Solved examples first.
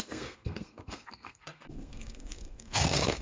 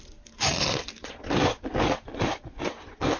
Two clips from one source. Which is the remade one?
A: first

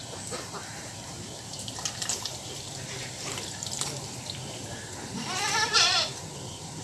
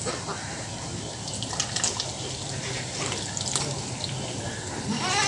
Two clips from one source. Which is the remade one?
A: first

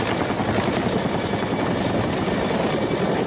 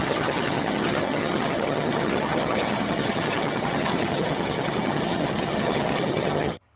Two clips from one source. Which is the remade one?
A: second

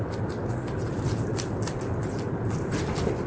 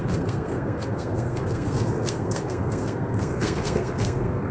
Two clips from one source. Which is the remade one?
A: second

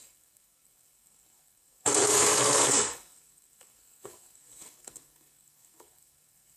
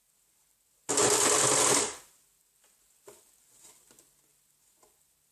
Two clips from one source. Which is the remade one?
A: first